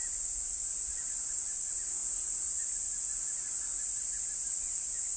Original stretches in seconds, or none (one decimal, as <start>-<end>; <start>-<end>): 0.0-5.2